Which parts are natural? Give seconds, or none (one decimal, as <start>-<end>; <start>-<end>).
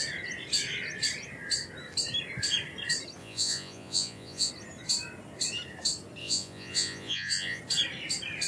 0.0-3.2; 4.5-6.2; 7.6-8.5